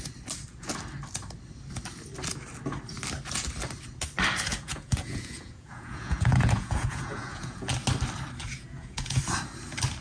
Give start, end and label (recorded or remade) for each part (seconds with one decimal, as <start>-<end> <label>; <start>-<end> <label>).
0.0-4.5 recorded; 4.5-7.7 remade; 7.7-8.4 recorded; 8.4-9.2 remade; 9.2-10.0 recorded